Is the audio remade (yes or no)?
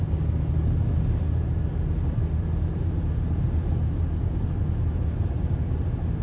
no